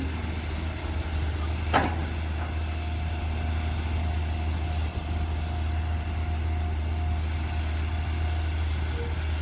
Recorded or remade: recorded